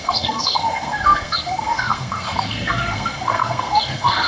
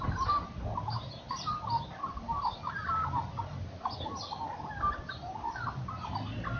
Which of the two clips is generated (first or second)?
first